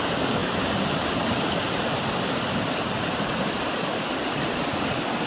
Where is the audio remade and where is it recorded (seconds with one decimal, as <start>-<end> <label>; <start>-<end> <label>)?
0.0-5.3 recorded